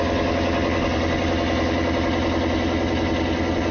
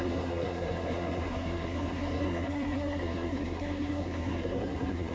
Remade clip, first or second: second